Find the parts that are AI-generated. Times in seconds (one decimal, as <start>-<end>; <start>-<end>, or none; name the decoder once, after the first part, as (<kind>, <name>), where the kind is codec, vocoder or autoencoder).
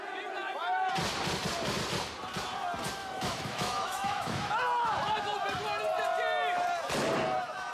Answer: 3.0-4.5 (autoencoder, DAC-VAE)